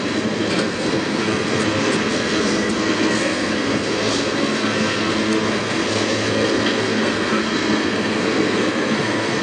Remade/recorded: remade